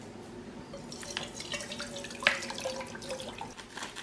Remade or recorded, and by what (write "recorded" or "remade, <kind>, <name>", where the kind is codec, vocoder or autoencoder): recorded